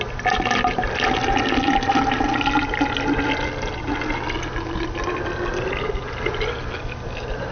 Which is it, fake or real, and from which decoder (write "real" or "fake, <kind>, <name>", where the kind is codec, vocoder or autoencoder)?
real